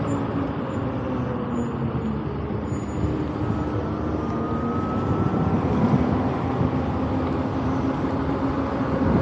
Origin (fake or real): real